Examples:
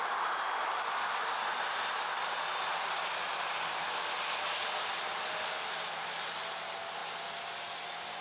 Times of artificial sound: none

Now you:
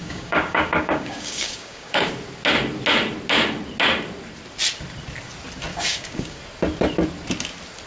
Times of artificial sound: 0.0-2.1 (codec, DAC); 5.7-6.4

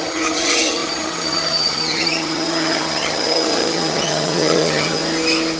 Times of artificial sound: 0.0-5.0 (vocoder, HiFi-GAN)